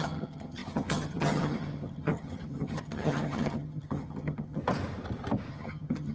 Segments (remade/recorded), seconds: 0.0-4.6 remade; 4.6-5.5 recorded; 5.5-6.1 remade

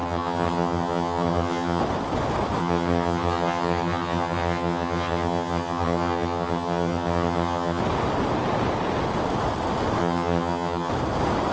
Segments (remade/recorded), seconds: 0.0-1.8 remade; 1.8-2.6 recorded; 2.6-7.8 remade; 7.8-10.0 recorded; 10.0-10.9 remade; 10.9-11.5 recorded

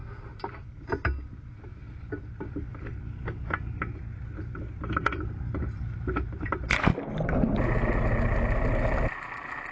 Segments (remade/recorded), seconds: 0.0-9.7 recorded

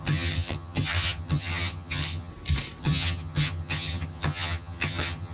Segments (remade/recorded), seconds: 0.0-2.3 remade; 2.3-2.8 recorded; 2.8-5.3 remade

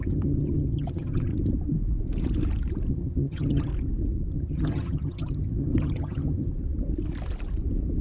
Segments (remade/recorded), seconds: 0.0-1.3 remade; 1.3-2.9 recorded; 2.9-3.7 remade; 3.7-4.3 recorded; 4.3-6.5 remade; 6.5-8.0 recorded